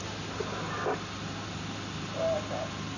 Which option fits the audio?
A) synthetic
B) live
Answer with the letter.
B